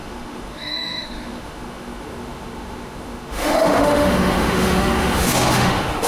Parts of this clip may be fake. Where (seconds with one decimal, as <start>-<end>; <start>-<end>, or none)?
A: 0.0-6.1